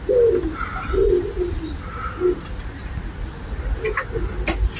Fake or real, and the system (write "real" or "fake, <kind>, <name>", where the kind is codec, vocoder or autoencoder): real